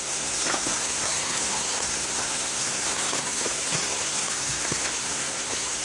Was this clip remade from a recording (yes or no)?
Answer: yes